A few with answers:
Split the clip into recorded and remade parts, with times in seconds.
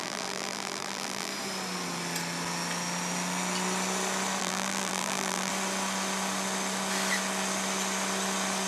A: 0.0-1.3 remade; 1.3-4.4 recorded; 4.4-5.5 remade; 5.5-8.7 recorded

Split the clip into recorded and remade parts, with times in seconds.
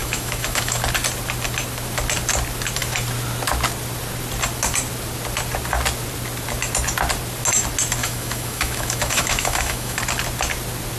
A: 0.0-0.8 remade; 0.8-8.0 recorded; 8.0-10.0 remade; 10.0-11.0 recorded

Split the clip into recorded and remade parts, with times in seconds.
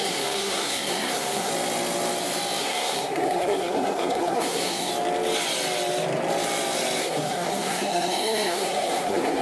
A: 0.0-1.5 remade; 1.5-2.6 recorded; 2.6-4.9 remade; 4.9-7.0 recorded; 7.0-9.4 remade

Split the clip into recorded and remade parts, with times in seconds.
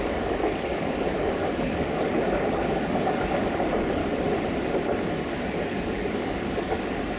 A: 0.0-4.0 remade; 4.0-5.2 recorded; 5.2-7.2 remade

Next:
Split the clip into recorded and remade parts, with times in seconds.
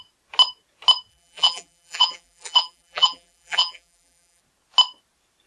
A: 0.0-1.1 recorded; 1.1-4.4 remade; 4.4-5.5 recorded